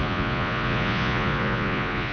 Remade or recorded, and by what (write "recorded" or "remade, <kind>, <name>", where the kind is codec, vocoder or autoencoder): remade, vocoder, Vocos